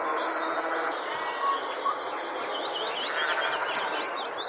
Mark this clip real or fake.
real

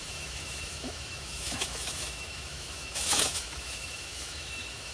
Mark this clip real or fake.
fake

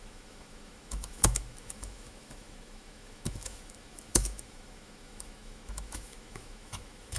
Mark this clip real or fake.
fake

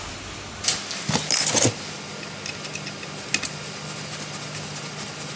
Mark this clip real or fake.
real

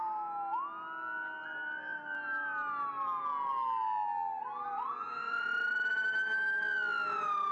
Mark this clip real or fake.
real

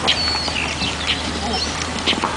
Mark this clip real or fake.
real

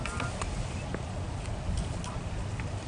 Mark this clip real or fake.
real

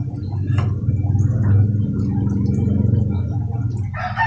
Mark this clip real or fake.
real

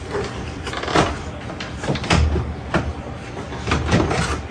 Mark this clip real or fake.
real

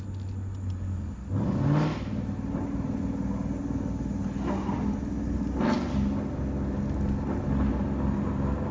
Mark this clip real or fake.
real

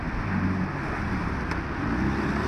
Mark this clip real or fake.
real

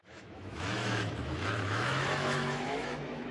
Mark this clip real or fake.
fake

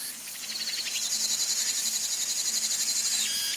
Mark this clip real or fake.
real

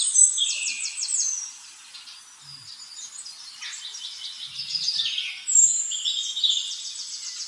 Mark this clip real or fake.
real